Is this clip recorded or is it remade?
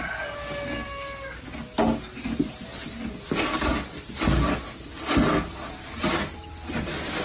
recorded